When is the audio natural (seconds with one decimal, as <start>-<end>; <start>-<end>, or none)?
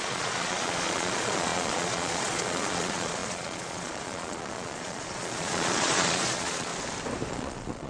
6.7-7.3